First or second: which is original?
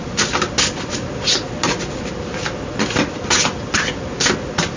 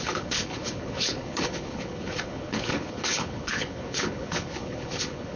first